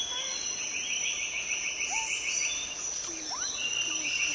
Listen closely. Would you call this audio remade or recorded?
recorded